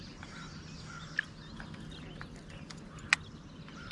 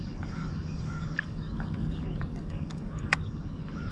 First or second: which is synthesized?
second